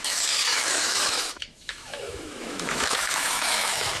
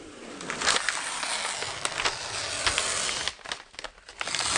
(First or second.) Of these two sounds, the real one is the second